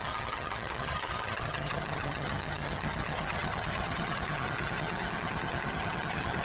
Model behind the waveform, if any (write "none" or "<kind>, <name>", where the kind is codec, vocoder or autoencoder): vocoder, HiFi-GAN